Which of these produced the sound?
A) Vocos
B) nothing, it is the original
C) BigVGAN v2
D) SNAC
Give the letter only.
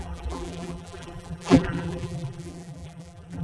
C